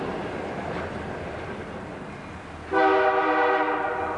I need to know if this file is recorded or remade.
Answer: recorded